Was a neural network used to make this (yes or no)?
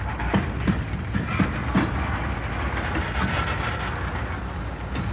no